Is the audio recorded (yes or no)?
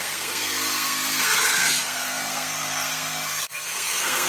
no